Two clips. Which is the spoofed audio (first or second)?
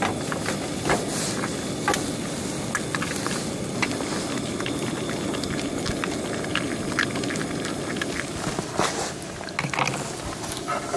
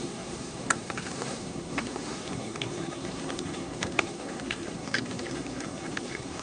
second